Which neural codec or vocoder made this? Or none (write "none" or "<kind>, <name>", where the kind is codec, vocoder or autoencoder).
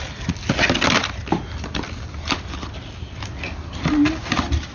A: none